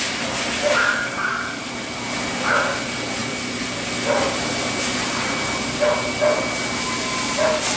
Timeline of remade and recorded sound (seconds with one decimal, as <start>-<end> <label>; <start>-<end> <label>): 0.0-0.8 recorded; 0.8-1.7 remade; 1.7-7.8 recorded